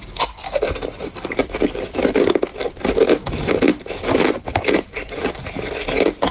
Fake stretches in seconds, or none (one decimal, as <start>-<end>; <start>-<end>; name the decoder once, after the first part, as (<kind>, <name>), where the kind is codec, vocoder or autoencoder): 2.5-5.3 (vocoder, BigVGAN v2)